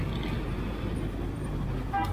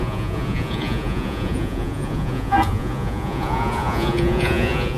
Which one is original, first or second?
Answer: first